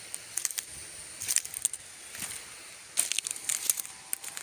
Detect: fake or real real